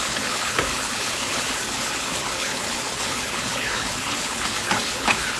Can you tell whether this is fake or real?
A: fake